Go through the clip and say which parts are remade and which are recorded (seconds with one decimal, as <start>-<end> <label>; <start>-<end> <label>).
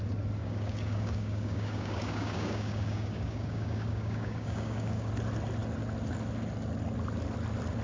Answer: 0.0-0.4 recorded; 0.4-5.1 remade; 5.1-7.8 recorded